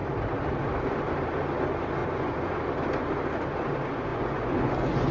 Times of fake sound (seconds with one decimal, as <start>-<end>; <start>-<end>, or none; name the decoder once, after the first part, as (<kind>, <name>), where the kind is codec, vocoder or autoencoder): 2.0-2.6 (vocoder, Vocos); 4.1-5.1